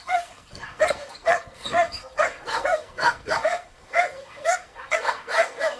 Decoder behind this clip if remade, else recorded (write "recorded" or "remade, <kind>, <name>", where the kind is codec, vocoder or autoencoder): remade, codec, SNAC